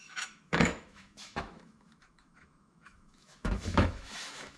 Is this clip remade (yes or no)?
yes